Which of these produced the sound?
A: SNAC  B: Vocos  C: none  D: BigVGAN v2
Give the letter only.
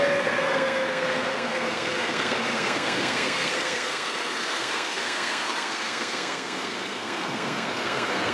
A